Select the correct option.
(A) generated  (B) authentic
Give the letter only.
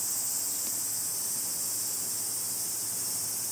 B